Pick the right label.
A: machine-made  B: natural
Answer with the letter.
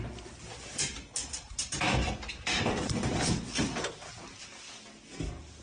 B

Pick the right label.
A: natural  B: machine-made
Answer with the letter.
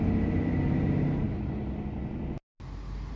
A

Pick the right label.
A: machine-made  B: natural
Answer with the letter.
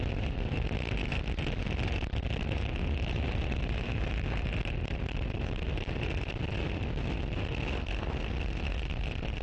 B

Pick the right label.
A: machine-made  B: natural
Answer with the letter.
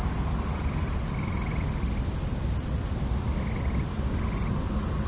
B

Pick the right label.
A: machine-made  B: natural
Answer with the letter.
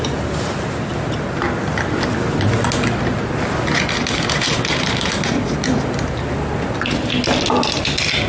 B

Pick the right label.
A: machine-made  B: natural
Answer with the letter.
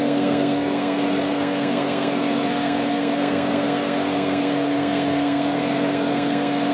A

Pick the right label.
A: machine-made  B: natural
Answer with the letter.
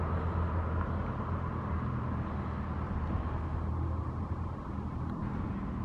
B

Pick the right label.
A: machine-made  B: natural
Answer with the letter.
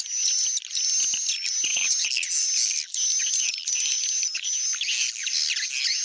B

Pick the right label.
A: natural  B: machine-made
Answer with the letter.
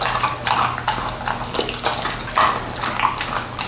A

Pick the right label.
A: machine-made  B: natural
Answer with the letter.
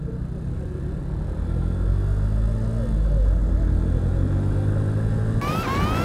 B